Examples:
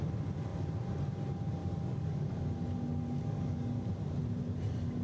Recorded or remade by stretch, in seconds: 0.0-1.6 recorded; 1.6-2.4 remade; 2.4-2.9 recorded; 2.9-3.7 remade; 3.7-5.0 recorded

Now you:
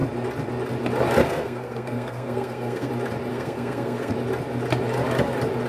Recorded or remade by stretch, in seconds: 0.0-1.2 recorded; 1.2-2.9 remade; 2.9-3.3 recorded; 3.3-4.1 remade; 4.1-5.7 recorded

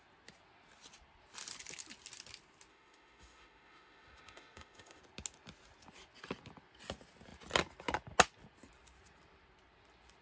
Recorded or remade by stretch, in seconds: 0.0-2.7 recorded; 2.7-5.0 remade; 5.0-10.2 recorded

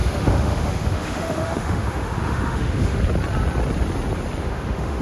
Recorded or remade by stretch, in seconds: 0.0-3.0 remade; 3.0-4.4 recorded; 4.4-5.0 remade

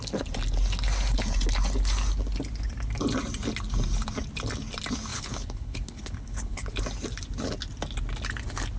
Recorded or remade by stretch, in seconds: 0.0-5.1 recorded; 5.1-6.8 remade; 6.8-8.8 recorded

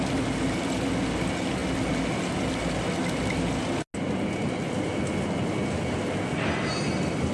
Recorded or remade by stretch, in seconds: 0.0-7.3 recorded

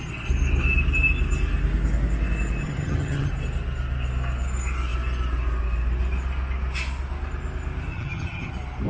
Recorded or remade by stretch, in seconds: 0.0-2.6 recorded; 2.6-3.3 remade; 3.3-7.9 recorded; 7.9-8.5 remade; 8.5-8.9 recorded